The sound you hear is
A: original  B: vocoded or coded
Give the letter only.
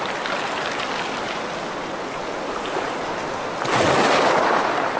A